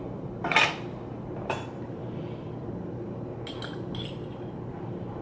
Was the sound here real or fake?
real